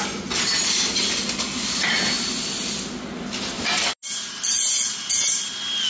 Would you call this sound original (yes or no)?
yes